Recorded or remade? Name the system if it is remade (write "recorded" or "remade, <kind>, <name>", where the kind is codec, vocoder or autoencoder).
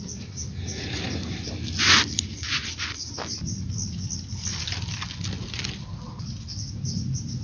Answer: recorded